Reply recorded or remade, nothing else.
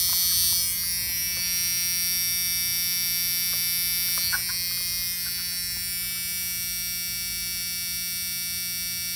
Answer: recorded